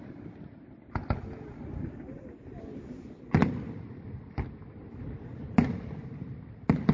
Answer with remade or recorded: recorded